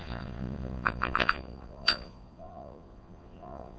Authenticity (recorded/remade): remade